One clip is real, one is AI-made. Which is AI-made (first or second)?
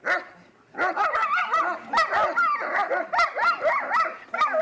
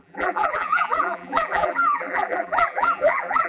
second